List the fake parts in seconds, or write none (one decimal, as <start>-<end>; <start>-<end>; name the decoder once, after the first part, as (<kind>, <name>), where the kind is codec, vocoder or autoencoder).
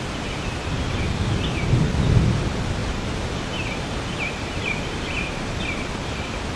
2.8-5.6 (vocoder, BigVGAN v2)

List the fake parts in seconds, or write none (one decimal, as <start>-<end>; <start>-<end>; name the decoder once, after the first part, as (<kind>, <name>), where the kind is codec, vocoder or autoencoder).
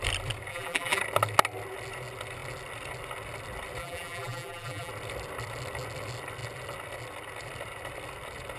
0.5-1.0 (vocoder, BigVGAN v2); 3.8-4.9